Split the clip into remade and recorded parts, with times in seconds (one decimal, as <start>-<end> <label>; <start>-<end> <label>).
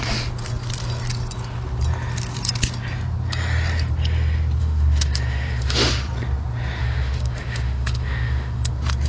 0.0-4.6 recorded; 4.6-5.9 remade; 5.9-6.8 recorded; 6.8-8.7 remade; 8.7-9.1 recorded